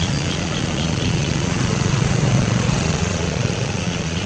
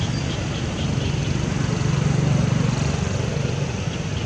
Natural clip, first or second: second